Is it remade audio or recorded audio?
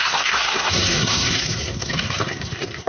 remade